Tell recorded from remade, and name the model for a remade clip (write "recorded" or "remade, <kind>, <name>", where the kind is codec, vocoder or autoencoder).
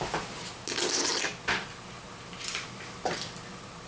recorded